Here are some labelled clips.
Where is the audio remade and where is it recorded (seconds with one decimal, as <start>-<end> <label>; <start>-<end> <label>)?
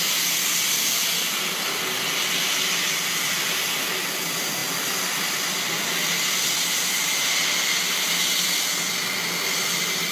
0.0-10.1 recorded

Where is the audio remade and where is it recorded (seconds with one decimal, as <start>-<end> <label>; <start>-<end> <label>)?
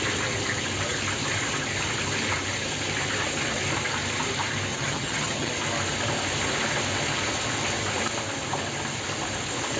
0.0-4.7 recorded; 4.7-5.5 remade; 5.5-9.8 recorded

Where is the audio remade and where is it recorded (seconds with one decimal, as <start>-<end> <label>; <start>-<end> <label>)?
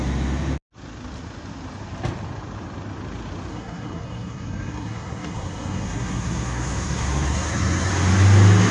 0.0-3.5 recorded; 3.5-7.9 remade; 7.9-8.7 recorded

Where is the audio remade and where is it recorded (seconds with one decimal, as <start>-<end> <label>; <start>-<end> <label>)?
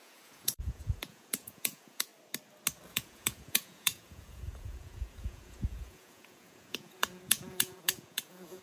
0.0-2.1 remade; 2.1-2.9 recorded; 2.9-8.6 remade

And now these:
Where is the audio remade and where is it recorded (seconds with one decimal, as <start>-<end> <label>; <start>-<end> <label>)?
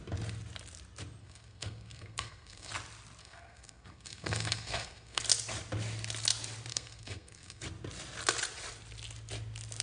0.0-1.2 recorded; 1.2-2.7 remade; 2.7-3.2 recorded; 3.2-5.2 remade; 5.2-6.7 recorded; 6.7-7.6 remade; 7.6-9.8 recorded